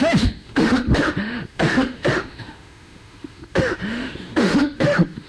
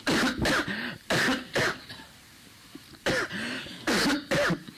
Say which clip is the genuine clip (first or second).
second